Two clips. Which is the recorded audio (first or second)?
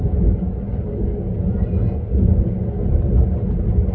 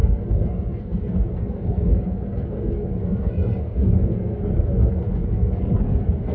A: first